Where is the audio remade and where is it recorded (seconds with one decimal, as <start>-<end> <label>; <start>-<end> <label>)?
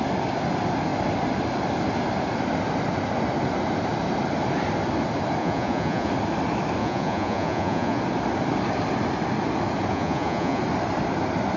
0.0-5.4 recorded; 5.4-6.1 remade; 6.1-6.8 recorded; 6.8-8.0 remade; 8.0-9.9 recorded; 9.9-10.6 remade; 10.6-11.6 recorded